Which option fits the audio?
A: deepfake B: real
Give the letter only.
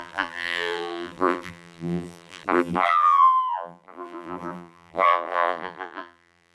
A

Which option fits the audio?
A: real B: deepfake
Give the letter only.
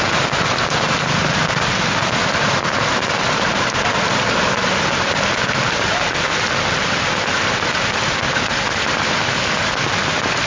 B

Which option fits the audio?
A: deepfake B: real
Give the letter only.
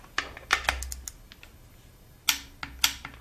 B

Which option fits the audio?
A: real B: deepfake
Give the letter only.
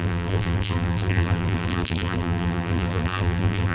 B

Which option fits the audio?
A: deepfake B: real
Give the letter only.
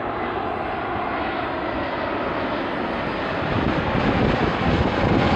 B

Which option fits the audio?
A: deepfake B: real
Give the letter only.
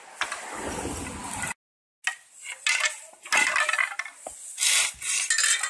B